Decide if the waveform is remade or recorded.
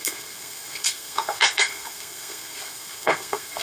remade